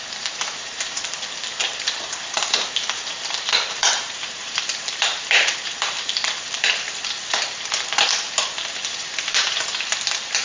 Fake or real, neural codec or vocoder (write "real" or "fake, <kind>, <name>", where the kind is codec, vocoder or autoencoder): fake, vocoder, BigVGAN v2